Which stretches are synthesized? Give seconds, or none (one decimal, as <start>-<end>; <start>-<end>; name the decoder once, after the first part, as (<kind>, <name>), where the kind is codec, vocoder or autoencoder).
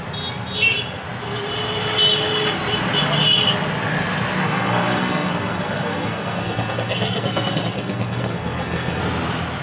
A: 4.4-9.0 (codec, SNAC)